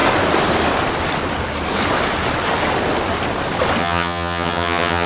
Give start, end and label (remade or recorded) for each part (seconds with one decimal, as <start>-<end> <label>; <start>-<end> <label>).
0.0-3.8 recorded; 3.8-5.1 remade